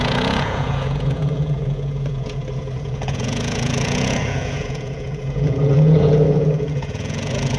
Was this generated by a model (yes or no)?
yes